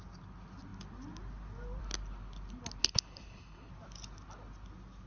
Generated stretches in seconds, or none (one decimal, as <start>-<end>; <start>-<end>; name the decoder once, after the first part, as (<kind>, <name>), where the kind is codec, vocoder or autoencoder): 2.8-3.7 (codec, HILCodec)